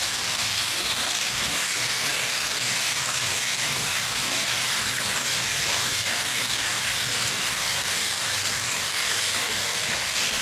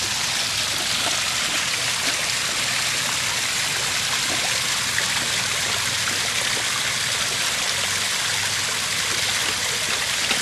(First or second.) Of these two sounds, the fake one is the first